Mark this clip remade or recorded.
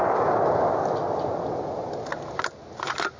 recorded